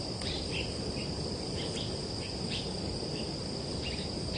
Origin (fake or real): real